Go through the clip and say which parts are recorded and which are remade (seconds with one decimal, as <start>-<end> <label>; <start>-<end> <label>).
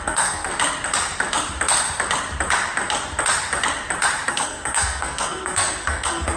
0.0-0.5 remade; 0.5-4.3 recorded; 4.3-6.4 remade